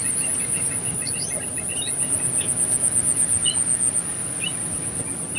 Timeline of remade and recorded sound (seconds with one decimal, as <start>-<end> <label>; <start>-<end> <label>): 0.0-5.4 recorded